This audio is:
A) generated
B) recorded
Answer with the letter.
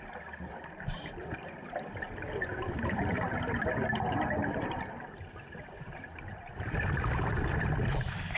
B